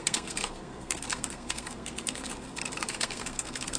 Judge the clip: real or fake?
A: fake